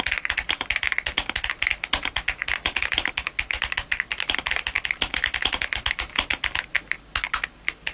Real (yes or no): yes